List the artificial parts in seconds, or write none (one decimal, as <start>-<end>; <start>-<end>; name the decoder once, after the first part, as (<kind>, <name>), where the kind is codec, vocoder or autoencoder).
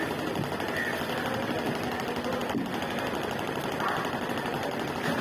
none